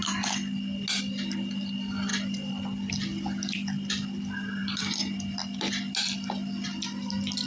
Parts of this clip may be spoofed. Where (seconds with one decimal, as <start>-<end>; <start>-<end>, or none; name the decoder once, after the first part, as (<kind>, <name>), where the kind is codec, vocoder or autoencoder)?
none